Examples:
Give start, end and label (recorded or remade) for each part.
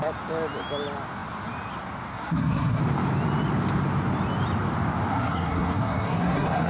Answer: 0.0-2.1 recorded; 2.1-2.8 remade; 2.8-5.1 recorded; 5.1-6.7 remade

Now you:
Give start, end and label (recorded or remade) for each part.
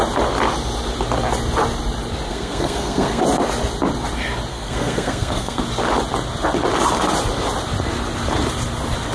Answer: 0.0-2.3 recorded; 2.3-3.2 remade; 3.2-4.5 recorded; 4.5-5.6 remade; 5.6-9.1 recorded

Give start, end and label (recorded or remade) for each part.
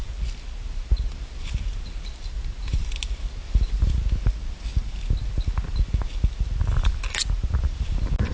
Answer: 0.0-8.3 recorded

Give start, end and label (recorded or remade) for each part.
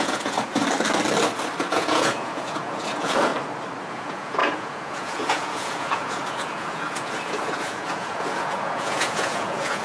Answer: 0.0-0.6 remade; 0.6-1.6 recorded; 1.6-3.3 remade; 3.3-3.9 recorded; 3.9-9.8 remade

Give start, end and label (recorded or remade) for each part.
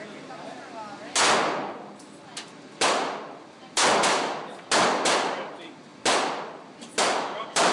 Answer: 0.0-7.7 recorded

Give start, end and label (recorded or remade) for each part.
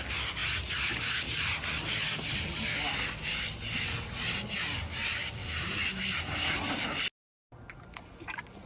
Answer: 0.0-8.7 recorded